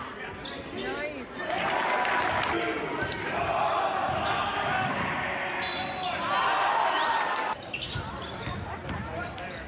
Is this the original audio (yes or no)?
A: yes